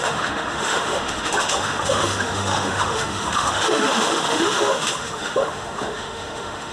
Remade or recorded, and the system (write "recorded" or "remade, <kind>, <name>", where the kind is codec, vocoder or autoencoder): remade, autoencoder, DAC-VAE